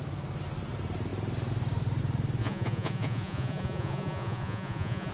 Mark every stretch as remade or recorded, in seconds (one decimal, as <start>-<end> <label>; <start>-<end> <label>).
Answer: 0.0-2.4 recorded; 2.4-5.1 remade